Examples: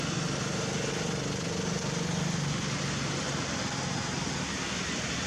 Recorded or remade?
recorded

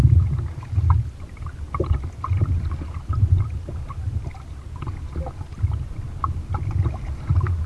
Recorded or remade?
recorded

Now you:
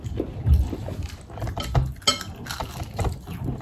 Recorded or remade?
recorded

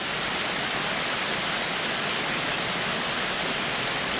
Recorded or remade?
recorded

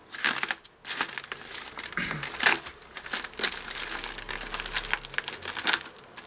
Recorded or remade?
recorded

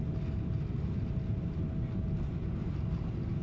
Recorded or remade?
recorded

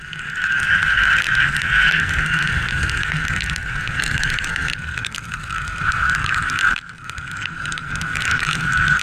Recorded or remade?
remade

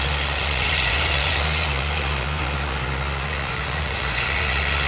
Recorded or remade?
remade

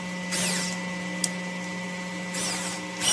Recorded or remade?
recorded